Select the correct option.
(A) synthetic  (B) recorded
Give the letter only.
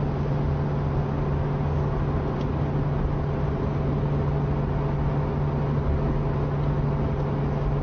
B